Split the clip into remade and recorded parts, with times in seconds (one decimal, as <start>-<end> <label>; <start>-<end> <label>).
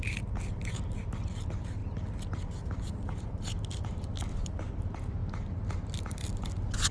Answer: 0.0-6.9 recorded